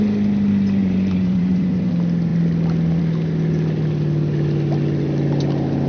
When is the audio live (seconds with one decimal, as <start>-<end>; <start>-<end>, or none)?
0.0-0.8; 1.9-5.9